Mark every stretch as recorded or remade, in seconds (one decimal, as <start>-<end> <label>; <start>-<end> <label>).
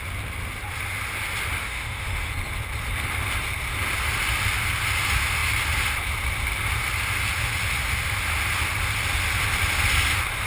0.0-1.6 recorded; 1.6-2.3 remade; 2.3-10.5 recorded